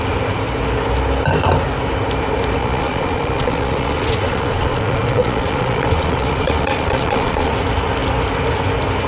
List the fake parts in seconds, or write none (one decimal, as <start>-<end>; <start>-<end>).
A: 2.6-7.5